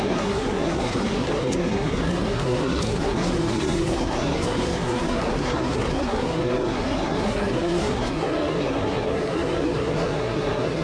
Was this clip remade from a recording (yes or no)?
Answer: yes